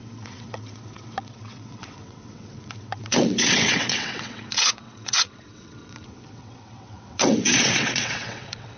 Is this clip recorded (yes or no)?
no